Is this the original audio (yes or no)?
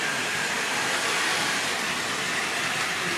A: yes